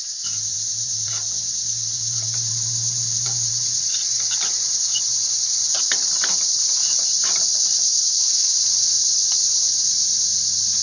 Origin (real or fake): fake